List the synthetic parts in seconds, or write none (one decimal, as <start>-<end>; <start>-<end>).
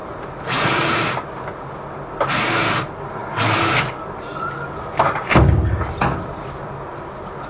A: 0.0-1.8